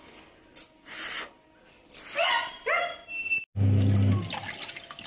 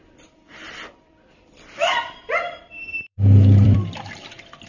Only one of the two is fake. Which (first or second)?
second